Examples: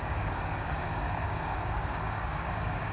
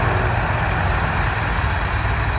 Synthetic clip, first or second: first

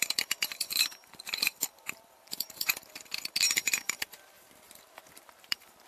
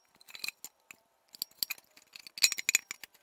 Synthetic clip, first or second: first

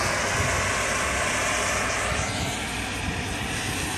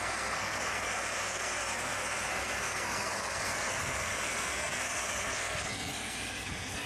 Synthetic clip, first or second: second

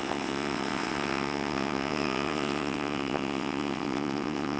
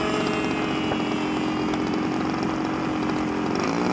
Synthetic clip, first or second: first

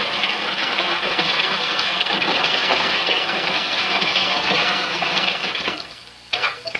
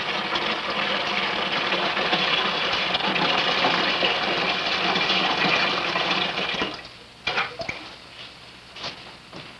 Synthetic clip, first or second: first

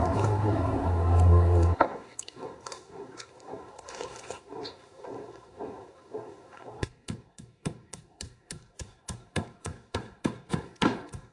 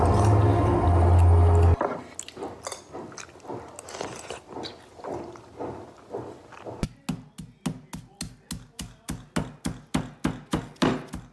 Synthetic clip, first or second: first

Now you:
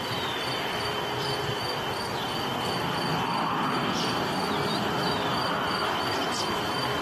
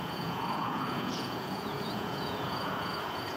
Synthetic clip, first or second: second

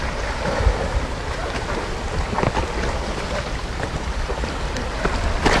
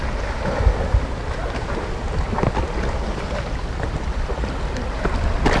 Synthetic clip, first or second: first